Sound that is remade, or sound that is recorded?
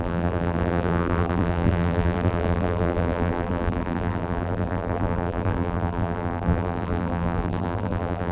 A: remade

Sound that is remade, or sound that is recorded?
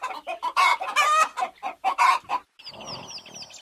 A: recorded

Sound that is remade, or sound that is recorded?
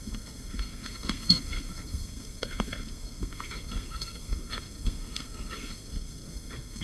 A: remade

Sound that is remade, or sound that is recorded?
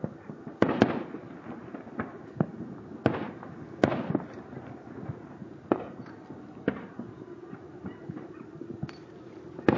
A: recorded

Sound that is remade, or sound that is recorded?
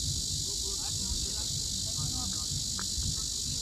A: recorded